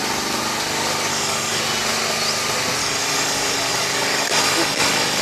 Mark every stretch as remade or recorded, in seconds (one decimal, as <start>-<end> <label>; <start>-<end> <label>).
0.0-1.1 recorded; 1.1-1.6 remade; 1.6-2.8 recorded; 2.8-5.2 remade